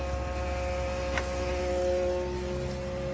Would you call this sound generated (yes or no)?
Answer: no